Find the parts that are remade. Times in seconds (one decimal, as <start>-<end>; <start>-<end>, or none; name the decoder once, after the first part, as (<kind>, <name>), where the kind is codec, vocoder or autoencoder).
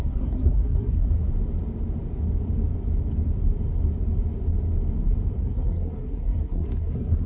0.0-1.3 (codec, SNAC); 5.4-7.3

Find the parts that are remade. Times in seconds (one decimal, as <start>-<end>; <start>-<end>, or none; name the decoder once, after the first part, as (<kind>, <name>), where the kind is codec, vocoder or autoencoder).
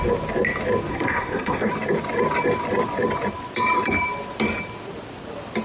0.9-1.7 (codec, SNAC)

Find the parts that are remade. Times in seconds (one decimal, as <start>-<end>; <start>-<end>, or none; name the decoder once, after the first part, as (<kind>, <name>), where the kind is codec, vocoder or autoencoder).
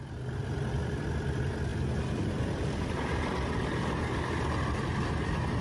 none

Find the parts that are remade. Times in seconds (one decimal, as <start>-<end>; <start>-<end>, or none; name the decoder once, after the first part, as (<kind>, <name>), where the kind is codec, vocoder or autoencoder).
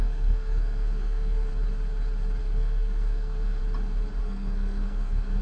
0.0-1.5 (codec, SNAC); 2.4-3.6; 4.2-5.4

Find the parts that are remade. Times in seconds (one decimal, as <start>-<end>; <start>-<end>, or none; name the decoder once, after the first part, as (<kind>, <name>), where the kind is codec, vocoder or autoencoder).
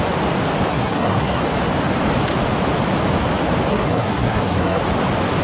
0.7-1.4 (codec, SNAC); 3.7-4.8